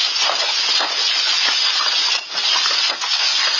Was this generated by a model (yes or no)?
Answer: no